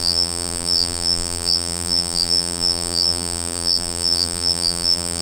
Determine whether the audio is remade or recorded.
remade